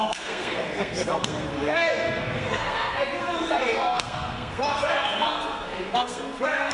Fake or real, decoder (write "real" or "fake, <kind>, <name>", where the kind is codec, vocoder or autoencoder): fake, codec, SNAC